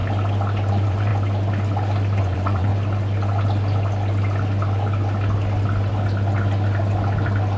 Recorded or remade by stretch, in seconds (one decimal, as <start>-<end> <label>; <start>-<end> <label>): 0.0-0.7 recorded; 0.7-1.1 remade; 1.1-2.2 recorded; 2.2-2.7 remade; 2.7-7.6 recorded